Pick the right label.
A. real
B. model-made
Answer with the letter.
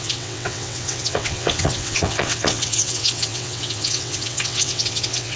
B